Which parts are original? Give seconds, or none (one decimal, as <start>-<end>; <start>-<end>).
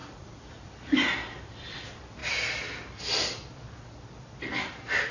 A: 0.7-5.1